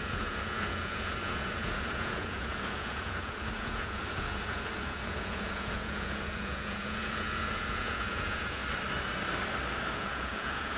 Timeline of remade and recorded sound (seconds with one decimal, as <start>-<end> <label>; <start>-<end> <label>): 0.0-8.6 remade; 8.6-9.9 recorded; 9.9-10.8 remade